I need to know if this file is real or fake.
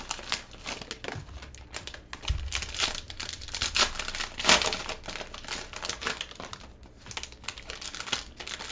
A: real